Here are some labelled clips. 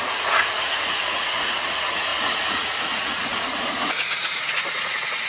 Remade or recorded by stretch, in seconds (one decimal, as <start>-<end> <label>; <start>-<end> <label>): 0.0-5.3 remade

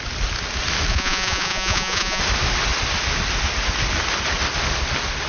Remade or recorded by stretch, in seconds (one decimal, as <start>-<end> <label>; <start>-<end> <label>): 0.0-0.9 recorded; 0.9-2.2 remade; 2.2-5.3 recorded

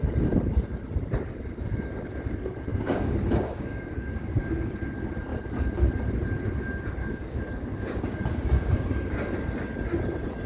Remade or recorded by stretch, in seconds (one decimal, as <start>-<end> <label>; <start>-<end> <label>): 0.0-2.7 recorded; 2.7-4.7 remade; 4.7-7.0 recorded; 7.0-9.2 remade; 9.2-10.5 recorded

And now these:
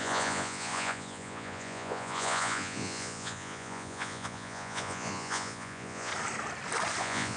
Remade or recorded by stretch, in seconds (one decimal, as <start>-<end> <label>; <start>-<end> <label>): 0.0-6.1 remade; 6.1-7.0 recorded; 7.0-7.4 remade

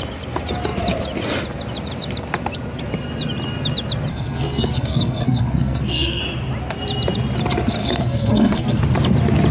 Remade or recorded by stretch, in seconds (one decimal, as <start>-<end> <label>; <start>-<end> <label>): 0.0-4.1 recorded; 4.1-6.2 remade; 6.2-7.8 recorded; 7.8-8.8 remade; 8.8-9.5 recorded

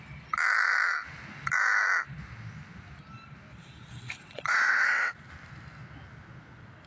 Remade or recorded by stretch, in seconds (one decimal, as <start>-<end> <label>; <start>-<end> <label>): 0.0-4.2 recorded; 4.2-5.1 remade; 5.1-6.9 recorded